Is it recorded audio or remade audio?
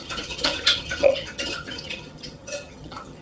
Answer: remade